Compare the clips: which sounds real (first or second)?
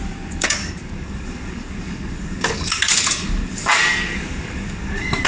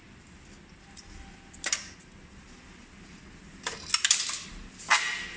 second